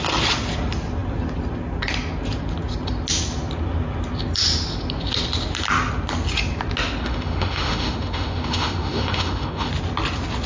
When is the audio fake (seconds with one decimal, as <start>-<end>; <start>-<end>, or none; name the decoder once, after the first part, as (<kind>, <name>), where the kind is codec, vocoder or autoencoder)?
7.0-9.7 (autoencoder, DAC-VAE)